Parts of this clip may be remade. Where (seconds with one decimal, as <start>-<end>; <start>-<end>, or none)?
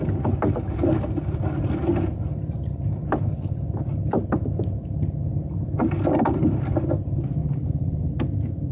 7.4-8.1